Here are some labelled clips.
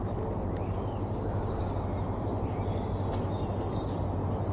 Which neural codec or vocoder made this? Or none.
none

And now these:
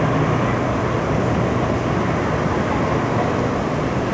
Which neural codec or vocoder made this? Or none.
none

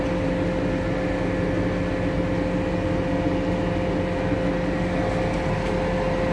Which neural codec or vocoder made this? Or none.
none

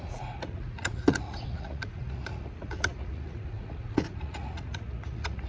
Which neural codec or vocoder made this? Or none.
vocoder, Vocos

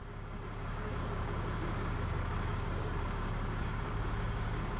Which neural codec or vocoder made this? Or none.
codec, DAC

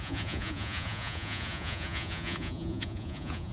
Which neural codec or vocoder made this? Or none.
vocoder, Vocos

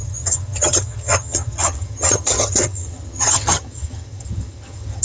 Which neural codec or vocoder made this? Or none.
vocoder, HiFi-GAN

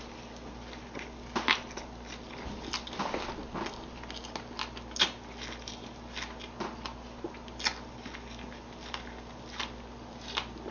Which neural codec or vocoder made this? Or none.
none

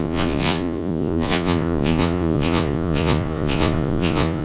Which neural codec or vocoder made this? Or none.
vocoder, Vocos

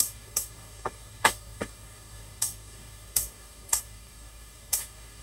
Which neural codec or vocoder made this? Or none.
codec, DAC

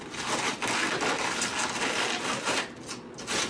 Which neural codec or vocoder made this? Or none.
none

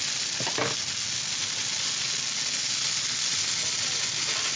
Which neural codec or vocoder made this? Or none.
none